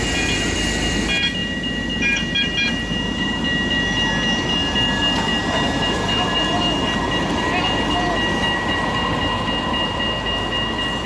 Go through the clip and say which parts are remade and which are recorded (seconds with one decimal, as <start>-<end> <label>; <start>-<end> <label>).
0.0-11.1 recorded